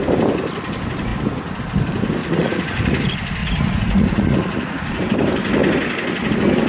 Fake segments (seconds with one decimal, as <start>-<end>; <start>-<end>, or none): 2.2-3.0; 3.4-5.0